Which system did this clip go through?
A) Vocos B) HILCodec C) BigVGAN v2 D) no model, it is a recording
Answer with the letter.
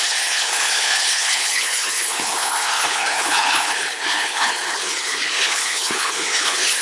B